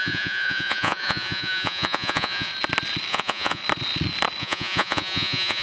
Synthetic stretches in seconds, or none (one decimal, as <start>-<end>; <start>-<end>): 0.0-2.5; 3.1-3.6; 4.4-5.6